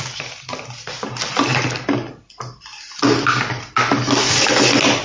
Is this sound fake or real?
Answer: real